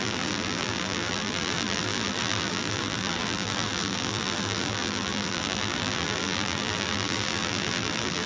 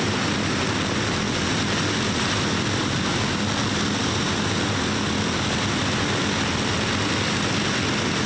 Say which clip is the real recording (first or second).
second